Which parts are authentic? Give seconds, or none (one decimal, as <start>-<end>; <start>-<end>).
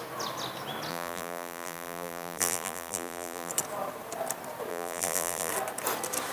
0.0-0.9; 3.5-4.7; 5.5-6.3